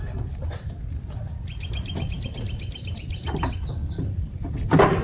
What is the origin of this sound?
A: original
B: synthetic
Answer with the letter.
A